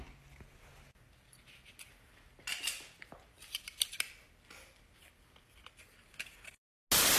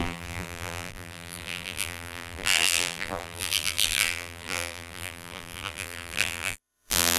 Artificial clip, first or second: second